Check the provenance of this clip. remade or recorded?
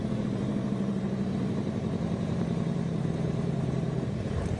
remade